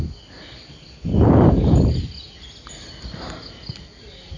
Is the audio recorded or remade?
recorded